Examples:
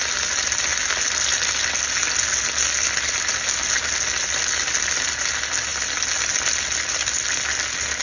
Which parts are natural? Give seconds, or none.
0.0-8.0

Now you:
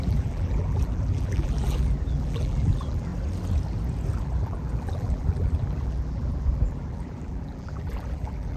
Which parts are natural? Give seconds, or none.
3.1-4.2

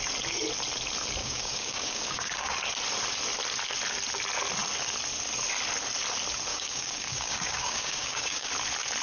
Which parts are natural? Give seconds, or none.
0.0-1.2; 2.5-6.5; 8.5-9.0